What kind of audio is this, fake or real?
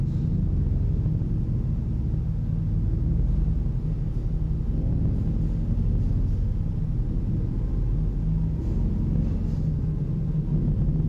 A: real